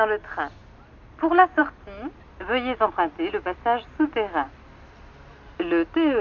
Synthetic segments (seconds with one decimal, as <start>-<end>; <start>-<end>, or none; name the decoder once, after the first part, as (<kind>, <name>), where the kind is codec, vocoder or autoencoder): none